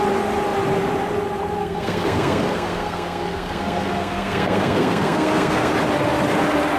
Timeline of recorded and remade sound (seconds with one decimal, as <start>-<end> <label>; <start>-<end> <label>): 0.0-1.6 recorded; 1.6-5.7 remade; 5.7-6.8 recorded